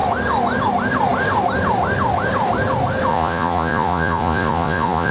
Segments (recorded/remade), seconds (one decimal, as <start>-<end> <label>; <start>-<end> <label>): 0.0-3.1 recorded; 3.1-5.1 remade